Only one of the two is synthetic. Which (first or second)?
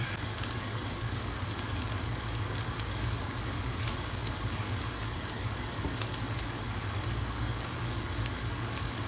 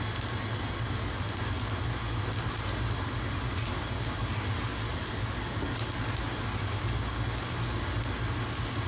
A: first